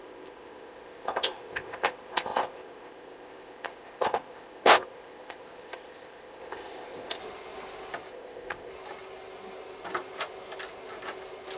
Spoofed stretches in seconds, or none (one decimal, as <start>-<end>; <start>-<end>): 0.0-7.2; 8.1-8.7